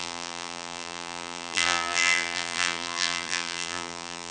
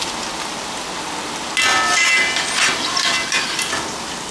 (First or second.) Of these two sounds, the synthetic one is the first